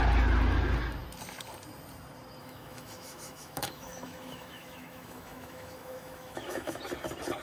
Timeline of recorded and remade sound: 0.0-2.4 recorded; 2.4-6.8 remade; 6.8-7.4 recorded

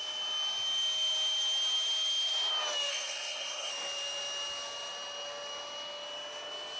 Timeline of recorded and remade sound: 0.0-2.9 recorded; 2.9-3.7 remade; 3.7-6.8 recorded

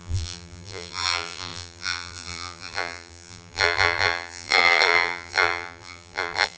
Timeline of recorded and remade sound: 0.0-6.6 remade